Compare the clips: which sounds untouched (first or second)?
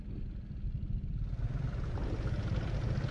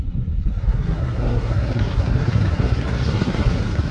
first